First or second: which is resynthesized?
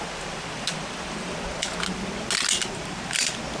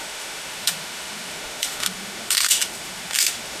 second